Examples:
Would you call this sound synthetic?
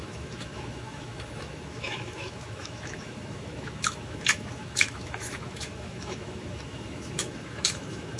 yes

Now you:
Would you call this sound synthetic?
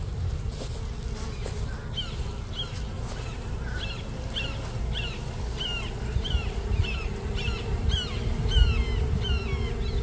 no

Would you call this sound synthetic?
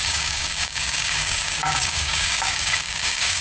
yes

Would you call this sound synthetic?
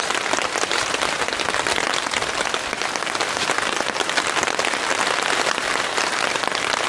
yes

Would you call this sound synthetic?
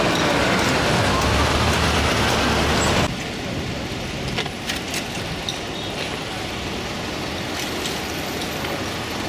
no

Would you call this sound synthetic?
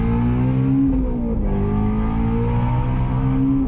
no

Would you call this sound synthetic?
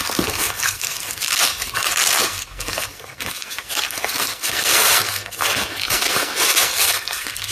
yes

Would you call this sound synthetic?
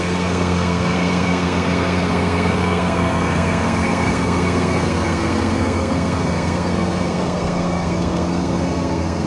yes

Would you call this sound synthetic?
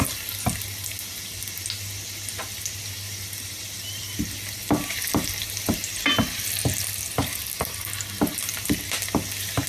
no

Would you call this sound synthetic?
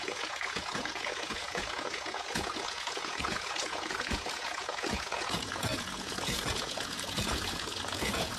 yes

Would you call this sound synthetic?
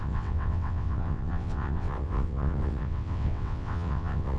yes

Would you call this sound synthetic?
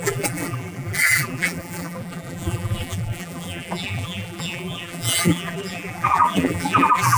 yes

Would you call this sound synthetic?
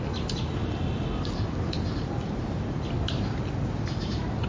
no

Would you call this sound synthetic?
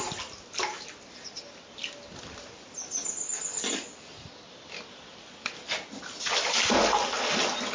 no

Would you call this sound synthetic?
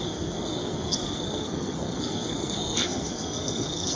yes